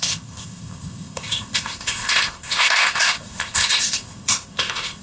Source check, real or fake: fake